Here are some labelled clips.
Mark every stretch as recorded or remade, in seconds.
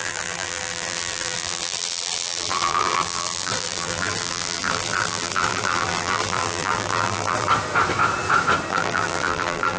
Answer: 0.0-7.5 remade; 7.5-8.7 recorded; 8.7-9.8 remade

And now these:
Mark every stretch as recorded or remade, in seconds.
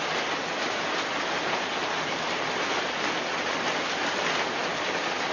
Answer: 0.0-1.8 recorded; 1.8-5.3 remade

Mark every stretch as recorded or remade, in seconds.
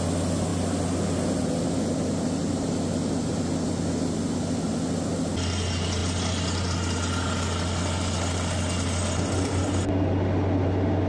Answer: 0.0-11.1 recorded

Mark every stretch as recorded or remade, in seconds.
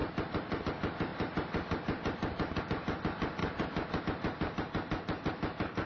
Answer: 0.0-0.6 remade; 0.6-1.1 recorded; 1.1-2.6 remade; 2.6-3.4 recorded; 3.4-4.0 remade; 4.0-5.9 recorded